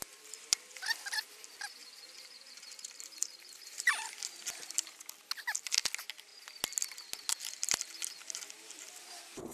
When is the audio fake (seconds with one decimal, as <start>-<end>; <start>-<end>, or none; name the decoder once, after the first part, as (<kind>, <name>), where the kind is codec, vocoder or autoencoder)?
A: 1.8-3.9 (vocoder, BigVGAN v2)